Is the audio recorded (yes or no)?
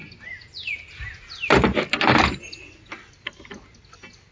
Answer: yes